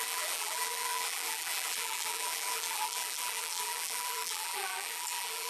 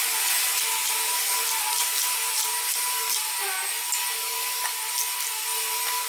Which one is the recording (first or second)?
second